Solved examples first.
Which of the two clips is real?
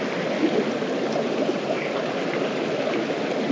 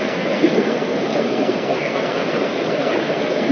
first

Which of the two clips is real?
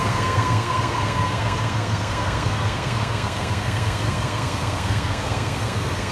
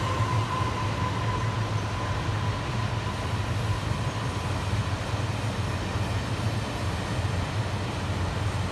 second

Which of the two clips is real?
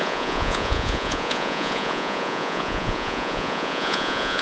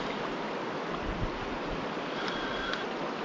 second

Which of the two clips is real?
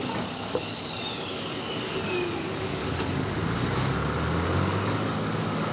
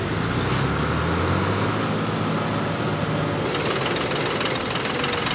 second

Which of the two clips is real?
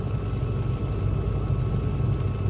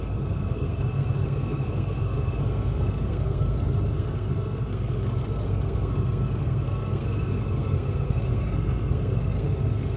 first